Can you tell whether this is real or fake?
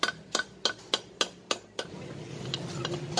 real